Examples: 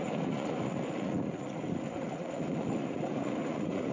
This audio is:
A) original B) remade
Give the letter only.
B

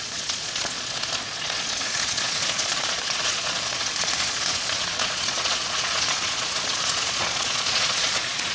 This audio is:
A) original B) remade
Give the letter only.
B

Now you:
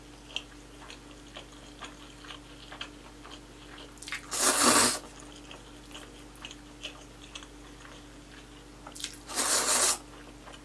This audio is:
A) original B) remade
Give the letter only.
A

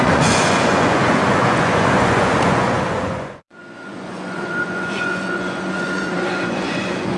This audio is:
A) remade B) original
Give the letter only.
A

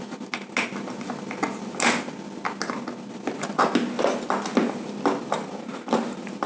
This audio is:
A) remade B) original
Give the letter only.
B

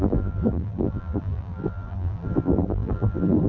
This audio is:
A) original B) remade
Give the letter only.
B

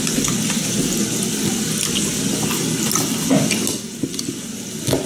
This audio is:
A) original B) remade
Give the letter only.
A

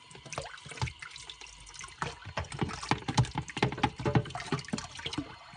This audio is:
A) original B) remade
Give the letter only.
A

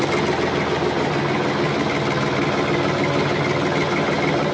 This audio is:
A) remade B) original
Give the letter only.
B